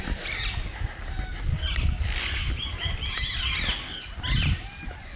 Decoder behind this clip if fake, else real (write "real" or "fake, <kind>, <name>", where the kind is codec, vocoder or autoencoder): real